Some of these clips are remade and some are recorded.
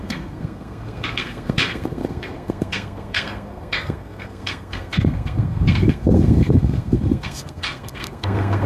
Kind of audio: remade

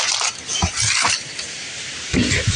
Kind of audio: recorded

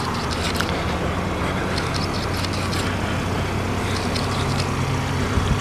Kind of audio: recorded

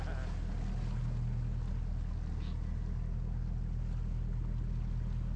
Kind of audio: recorded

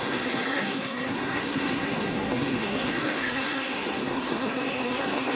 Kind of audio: remade